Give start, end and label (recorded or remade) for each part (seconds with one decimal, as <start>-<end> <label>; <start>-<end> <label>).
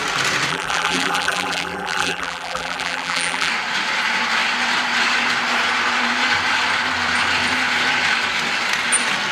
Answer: 0.0-0.5 recorded; 0.5-3.5 remade; 3.5-9.3 recorded